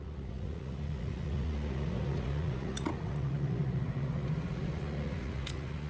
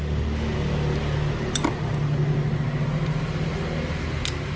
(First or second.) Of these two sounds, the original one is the second